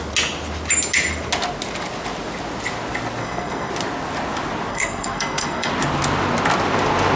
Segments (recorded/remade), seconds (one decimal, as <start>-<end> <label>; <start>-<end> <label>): 0.0-3.2 recorded; 3.2-3.7 remade; 3.7-4.7 recorded; 4.7-5.7 remade; 5.7-7.2 recorded